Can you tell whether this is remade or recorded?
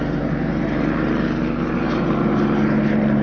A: recorded